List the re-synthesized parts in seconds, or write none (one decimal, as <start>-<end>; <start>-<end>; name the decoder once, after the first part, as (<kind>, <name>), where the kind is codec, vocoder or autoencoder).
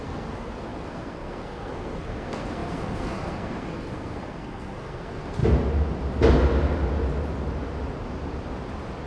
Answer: 0.0-5.4 (codec, SNAC)